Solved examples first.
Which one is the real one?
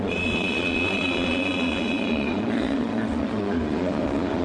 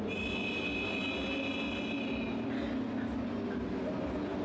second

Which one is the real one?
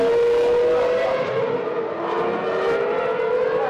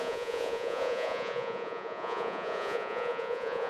first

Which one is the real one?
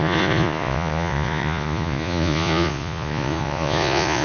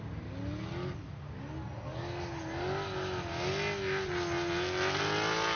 second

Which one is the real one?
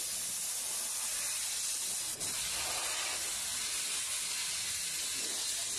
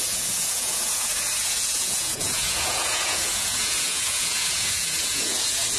first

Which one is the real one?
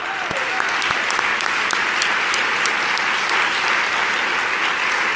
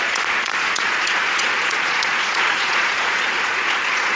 first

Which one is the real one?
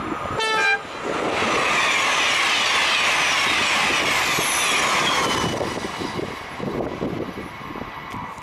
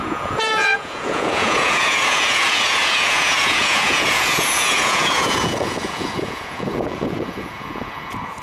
first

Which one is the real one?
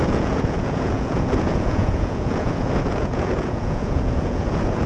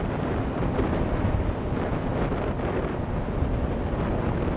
second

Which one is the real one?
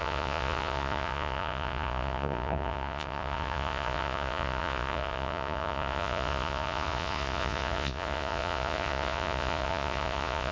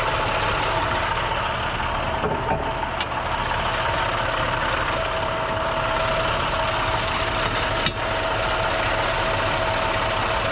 second